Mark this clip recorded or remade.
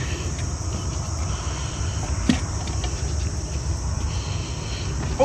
recorded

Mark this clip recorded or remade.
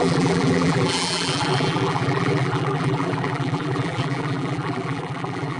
remade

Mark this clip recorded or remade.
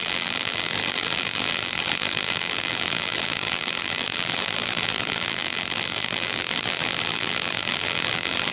remade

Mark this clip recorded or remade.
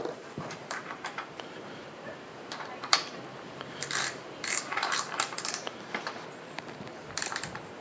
remade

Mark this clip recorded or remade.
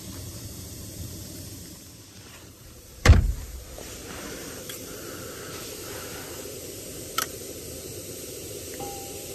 remade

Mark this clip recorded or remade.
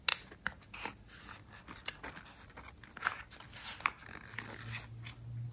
recorded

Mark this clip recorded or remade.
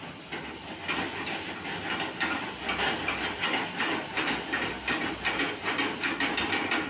recorded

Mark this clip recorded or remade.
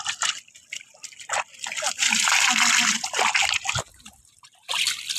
recorded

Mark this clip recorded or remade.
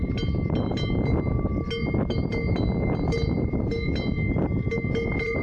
recorded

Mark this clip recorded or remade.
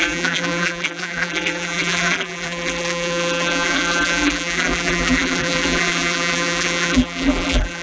remade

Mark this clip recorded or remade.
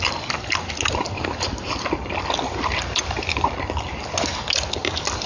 recorded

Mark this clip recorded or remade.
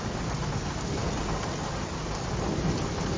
recorded